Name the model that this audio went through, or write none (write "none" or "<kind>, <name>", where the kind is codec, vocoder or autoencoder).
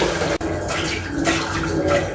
none